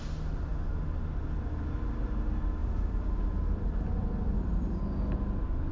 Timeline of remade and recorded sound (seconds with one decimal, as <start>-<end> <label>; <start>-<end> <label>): 0.0-0.5 recorded; 0.5-1.0 remade; 1.0-2.6 recorded; 2.6-4.8 remade; 4.8-5.7 recorded